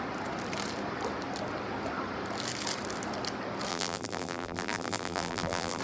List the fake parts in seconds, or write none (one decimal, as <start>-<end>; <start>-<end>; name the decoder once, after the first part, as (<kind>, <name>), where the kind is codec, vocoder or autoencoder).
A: 3.7-5.8 (vocoder, BigVGAN v2)